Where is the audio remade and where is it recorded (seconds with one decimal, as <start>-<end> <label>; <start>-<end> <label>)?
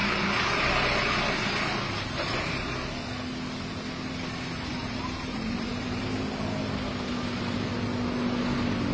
0.0-4.7 recorded; 4.7-6.0 remade; 6.0-8.9 recorded